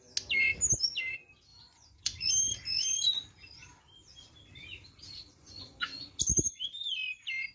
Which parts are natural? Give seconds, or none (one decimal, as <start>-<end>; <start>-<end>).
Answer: 0.0-1.5; 2.3-5.4; 6.0-7.5